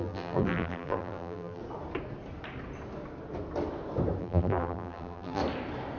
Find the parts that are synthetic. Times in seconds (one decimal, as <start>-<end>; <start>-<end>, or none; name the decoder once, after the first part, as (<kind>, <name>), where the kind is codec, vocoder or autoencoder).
0.0-1.6 (vocoder, BigVGAN v2); 4.2-5.4